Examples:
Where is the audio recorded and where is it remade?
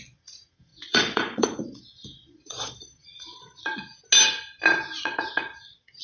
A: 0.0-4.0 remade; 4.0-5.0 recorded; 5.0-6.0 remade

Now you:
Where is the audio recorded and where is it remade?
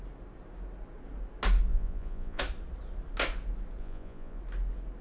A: 0.0-1.7 recorded; 1.7-2.4 remade; 2.4-3.8 recorded; 3.8-4.4 remade; 4.4-5.0 recorded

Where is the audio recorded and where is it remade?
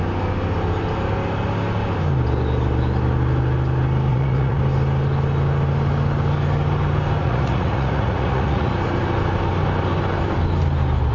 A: 0.0-4.1 recorded; 4.1-4.6 remade; 4.6-7.2 recorded; 7.2-8.7 remade; 8.7-11.1 recorded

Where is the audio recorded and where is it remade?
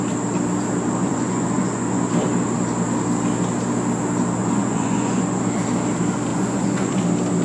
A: 0.0-1.0 recorded; 1.0-2.0 remade; 2.0-4.4 recorded; 4.4-5.4 remade; 5.4-6.3 recorded; 6.3-7.0 remade; 7.0-7.4 recorded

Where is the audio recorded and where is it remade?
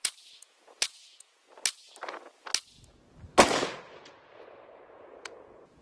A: 0.0-1.5 remade; 1.5-2.1 recorded; 2.1-2.5 remade; 2.5-3.6 recorded; 3.6-5.8 remade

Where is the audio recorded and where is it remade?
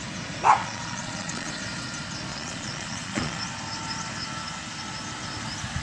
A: 0.0-0.6 recorded; 0.6-1.5 remade; 1.5-2.3 recorded; 2.3-3.4 remade; 3.4-5.8 recorded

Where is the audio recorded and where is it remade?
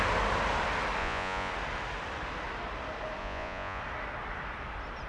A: 0.0-1.0 recorded; 1.0-1.5 remade; 1.5-3.2 recorded; 3.2-3.8 remade; 3.8-5.1 recorded